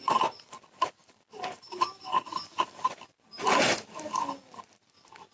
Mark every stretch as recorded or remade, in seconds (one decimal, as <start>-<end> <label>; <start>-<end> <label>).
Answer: 0.0-5.3 remade